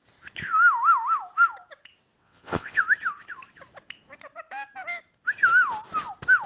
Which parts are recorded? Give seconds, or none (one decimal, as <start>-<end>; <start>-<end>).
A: 0.0-2.2; 2.8-6.5